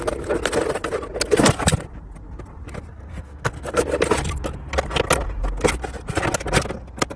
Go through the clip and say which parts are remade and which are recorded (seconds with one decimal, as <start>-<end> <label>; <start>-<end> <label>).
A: 0.0-2.9 recorded; 2.9-3.8 remade; 3.8-7.2 recorded